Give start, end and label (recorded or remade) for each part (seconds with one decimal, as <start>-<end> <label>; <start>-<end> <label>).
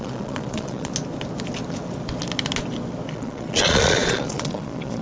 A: 0.0-0.9 remade; 0.9-3.1 recorded; 3.1-5.0 remade